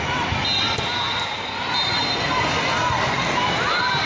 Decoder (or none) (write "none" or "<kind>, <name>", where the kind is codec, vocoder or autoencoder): none